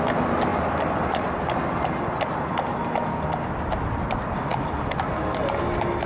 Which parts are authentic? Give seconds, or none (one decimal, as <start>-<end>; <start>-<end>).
0.0-0.5; 1.4-6.1